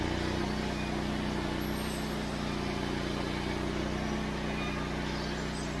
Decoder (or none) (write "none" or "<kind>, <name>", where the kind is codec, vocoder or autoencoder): none